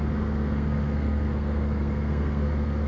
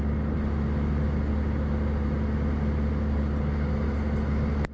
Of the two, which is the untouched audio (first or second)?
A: second